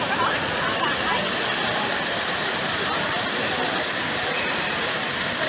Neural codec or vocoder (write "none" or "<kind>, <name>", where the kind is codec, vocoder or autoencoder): vocoder, BigVGAN v2